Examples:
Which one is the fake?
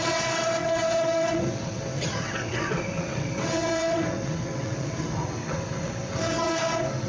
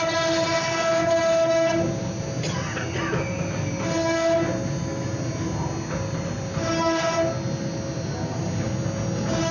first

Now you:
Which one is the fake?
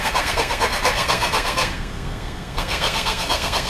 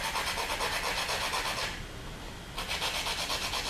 first